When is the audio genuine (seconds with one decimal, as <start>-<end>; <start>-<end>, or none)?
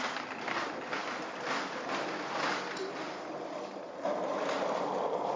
0.0-5.4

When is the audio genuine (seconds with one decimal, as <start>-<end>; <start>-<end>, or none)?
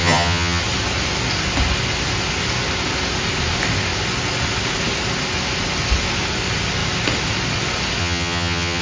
0.6-8.0